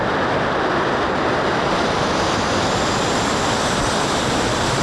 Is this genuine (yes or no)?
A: yes